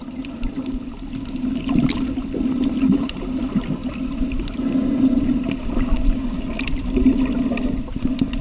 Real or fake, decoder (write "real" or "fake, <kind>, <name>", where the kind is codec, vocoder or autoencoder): real